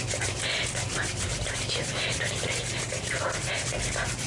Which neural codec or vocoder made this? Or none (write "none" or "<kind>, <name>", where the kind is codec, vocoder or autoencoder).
none